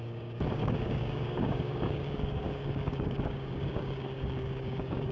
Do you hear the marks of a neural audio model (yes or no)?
yes